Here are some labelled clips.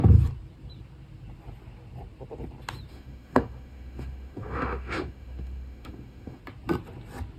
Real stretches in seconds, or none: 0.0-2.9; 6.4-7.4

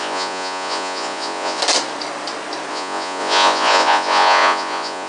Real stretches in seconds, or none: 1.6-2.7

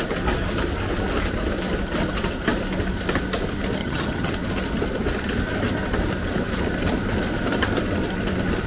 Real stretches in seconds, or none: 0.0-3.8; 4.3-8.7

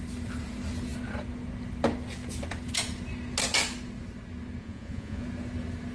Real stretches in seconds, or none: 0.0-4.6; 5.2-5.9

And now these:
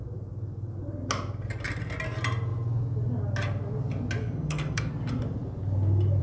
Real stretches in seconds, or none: 0.0-4.2; 4.9-6.2